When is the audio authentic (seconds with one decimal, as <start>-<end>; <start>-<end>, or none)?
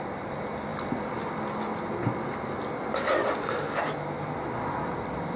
0.0-5.4